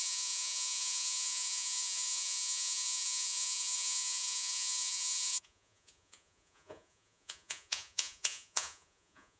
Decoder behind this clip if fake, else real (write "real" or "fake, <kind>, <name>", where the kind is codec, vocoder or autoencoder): fake, vocoder, Vocos